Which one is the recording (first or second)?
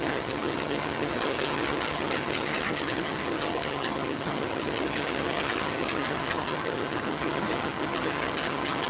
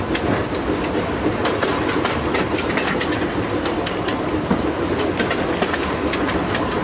second